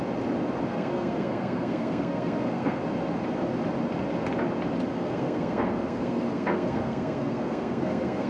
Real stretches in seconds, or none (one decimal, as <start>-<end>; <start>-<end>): 0.0-0.7; 2.8-5.0